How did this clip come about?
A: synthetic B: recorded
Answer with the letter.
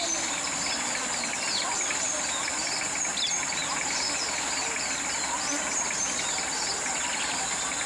B